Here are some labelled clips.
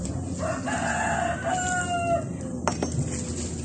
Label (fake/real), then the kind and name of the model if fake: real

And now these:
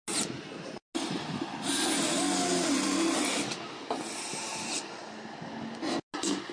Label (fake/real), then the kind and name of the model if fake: real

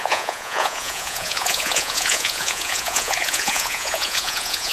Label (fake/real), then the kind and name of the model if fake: fake, vocoder, Vocos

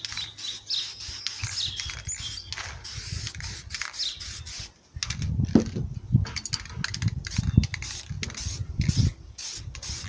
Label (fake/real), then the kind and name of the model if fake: real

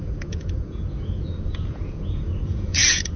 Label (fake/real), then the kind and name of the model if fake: fake, vocoder, Vocos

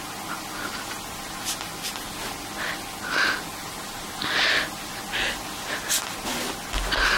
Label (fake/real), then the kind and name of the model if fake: real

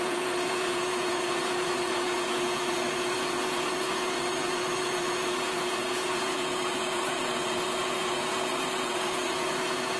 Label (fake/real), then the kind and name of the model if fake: fake, vocoder, Vocos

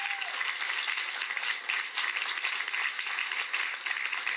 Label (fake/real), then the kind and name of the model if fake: real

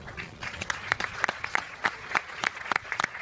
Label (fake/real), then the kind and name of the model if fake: fake, vocoder, Vocos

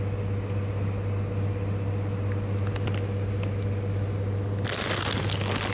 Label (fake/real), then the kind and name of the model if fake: real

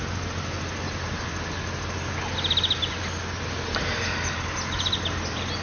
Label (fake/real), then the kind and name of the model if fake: real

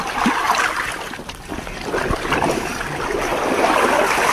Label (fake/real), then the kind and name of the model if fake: real